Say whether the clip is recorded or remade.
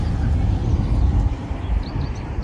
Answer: recorded